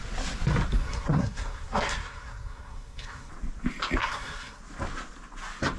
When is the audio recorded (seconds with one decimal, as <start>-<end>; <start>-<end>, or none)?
0.0-0.8; 3.3-4.0; 4.6-5.8